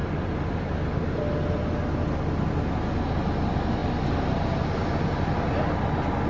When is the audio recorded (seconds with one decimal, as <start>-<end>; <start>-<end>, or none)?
1.2-6.3